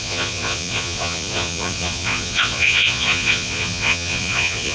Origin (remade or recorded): remade